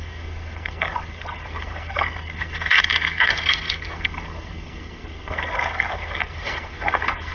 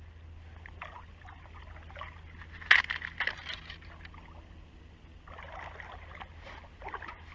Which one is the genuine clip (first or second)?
second